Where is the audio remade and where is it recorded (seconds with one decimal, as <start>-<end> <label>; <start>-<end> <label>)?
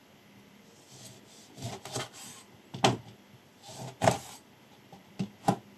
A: 0.0-5.8 recorded